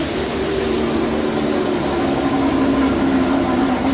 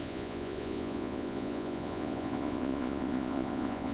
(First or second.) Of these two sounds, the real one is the first